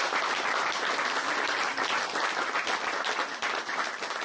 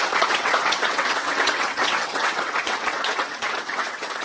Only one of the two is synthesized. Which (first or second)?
second